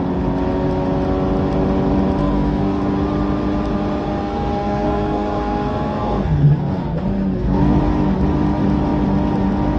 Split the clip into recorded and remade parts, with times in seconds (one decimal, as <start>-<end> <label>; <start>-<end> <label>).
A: 0.0-2.2 recorded; 2.2-2.8 remade; 2.8-4.2 recorded; 4.2-7.8 remade; 7.8-9.8 recorded